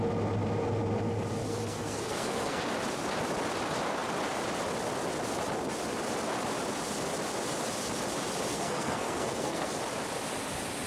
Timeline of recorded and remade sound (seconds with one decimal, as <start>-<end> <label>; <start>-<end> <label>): 0.0-1.4 recorded; 1.4-2.6 remade; 2.6-8.5 recorded; 8.5-9.7 remade; 9.7-10.9 recorded